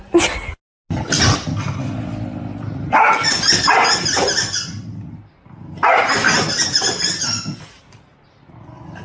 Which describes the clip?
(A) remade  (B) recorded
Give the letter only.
B